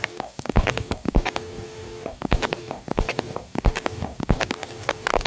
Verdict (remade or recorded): remade